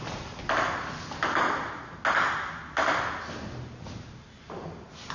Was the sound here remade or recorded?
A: recorded